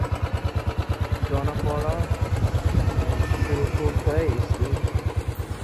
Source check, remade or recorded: recorded